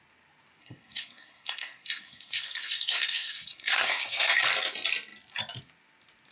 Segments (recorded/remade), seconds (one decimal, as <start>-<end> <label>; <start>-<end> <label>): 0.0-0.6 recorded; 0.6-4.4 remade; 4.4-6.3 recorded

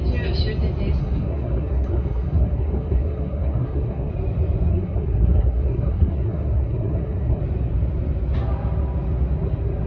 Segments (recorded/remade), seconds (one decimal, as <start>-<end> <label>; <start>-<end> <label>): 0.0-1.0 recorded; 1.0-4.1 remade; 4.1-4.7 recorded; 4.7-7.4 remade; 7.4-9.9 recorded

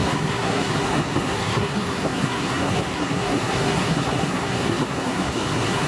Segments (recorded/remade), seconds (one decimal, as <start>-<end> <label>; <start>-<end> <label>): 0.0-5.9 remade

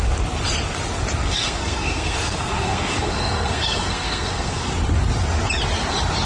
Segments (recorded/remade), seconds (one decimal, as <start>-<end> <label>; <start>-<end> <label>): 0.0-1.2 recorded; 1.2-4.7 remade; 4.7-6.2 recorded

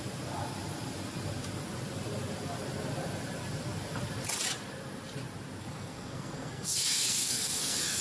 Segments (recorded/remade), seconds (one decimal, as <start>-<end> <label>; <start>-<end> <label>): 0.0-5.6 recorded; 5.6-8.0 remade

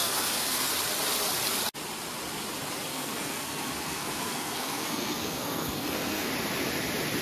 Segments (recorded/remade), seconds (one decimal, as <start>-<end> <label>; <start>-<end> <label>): 0.0-0.7 remade; 0.7-2.9 recorded; 2.9-6.3 remade; 6.3-7.2 recorded